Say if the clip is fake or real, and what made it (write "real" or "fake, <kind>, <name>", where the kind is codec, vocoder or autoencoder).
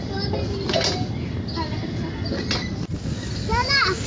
real